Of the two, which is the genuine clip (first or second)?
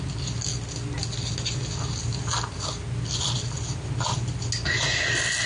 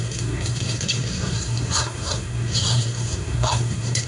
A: first